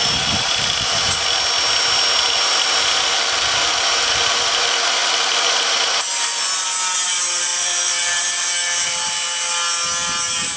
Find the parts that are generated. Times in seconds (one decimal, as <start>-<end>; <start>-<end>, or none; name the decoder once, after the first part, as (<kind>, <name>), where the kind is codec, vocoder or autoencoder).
5.0-5.7 (vocoder, BigVGAN v2); 7.5-8.2